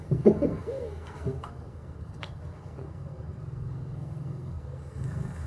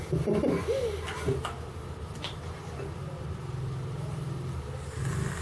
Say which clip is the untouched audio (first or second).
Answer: second